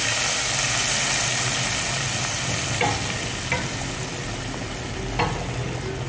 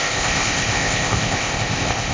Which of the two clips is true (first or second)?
first